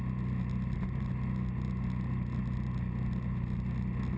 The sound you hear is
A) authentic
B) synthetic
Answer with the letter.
A